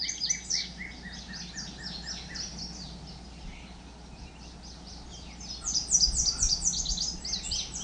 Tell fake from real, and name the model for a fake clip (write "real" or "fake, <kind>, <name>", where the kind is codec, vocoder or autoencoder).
real